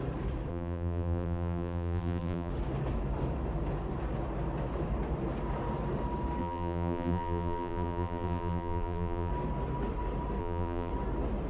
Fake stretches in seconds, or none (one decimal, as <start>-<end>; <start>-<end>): 0.5-2.5; 6.4-9.3; 10.4-10.9